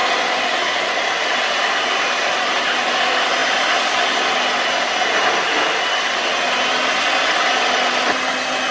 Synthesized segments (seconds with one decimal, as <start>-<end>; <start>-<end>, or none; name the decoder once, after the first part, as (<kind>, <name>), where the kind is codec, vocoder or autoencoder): none

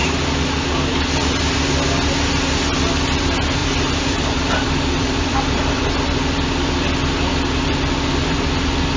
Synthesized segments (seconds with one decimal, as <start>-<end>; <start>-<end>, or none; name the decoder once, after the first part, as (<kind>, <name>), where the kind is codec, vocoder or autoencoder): 3.6-6.0 (vocoder, BigVGAN v2)

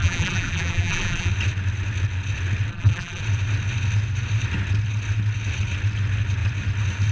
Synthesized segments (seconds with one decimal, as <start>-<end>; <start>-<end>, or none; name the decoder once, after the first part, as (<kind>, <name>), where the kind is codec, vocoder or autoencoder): 0.0-1.3 (vocoder, BigVGAN v2); 2.7-3.2

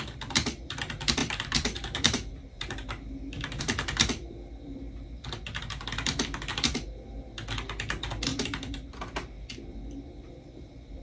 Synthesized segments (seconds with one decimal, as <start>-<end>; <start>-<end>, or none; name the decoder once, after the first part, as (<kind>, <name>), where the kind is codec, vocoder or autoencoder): 1.2-3.6 (vocoder, BigVGAN v2); 8.3-9.0

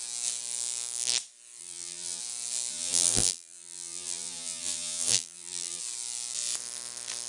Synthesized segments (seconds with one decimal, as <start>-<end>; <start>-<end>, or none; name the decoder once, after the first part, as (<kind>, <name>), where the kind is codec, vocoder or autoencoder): 1.6-2.2 (vocoder, BigVGAN v2); 2.7-5.8

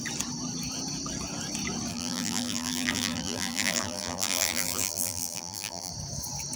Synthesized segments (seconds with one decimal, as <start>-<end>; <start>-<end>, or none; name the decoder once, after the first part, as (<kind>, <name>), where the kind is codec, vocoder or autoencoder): 1.9-5.9 (vocoder, BigVGAN v2)

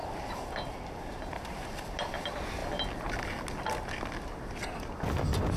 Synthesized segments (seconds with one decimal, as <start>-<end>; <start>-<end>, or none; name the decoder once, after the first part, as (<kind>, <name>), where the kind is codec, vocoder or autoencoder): none

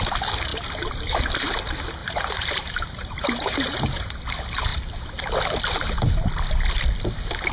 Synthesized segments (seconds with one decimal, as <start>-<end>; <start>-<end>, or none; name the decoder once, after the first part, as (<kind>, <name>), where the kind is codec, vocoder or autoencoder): 2.0-4.2 (vocoder, BigVGAN v2)